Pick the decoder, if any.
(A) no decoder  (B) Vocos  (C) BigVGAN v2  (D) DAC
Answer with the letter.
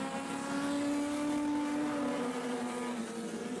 A